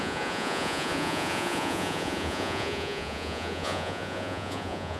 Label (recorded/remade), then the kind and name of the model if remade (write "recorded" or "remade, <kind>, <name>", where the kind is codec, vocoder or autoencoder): remade, vocoder, Vocos